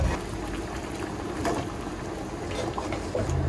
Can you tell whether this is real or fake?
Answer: real